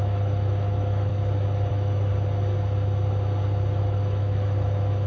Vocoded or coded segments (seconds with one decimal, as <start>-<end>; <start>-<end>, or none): 0.0-1.1; 1.7-2.1; 3.8-5.1